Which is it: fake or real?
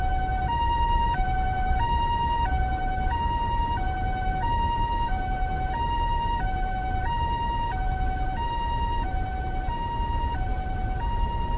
real